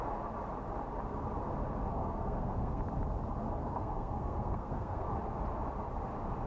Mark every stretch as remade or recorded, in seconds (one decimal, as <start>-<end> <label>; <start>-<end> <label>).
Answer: 0.0-2.0 recorded; 2.0-2.8 remade; 2.8-3.6 recorded; 3.6-5.1 remade; 5.1-6.5 recorded